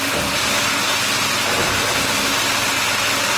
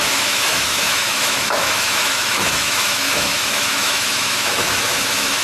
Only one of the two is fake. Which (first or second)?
second